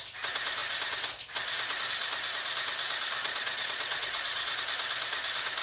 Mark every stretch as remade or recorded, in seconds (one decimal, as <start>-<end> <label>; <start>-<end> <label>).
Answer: 0.0-3.2 recorded; 3.2-4.6 remade; 4.6-5.6 recorded